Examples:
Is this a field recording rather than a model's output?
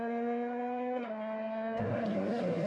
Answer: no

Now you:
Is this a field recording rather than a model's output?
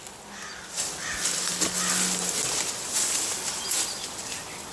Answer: yes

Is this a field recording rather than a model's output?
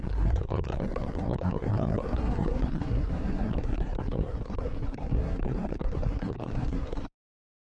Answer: no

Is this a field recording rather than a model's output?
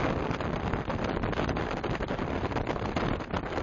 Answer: yes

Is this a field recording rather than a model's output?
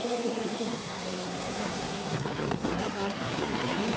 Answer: no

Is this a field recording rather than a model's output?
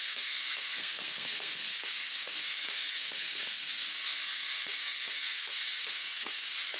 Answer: no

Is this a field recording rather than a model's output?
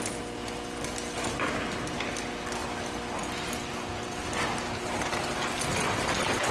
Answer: yes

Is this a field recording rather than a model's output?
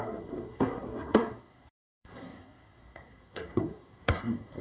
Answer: no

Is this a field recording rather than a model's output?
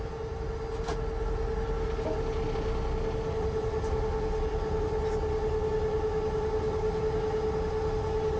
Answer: yes